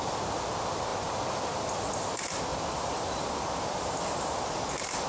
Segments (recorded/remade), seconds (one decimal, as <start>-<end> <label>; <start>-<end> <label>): 0.0-2.5 recorded; 2.5-5.1 remade